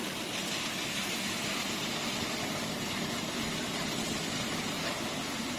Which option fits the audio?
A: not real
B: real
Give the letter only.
B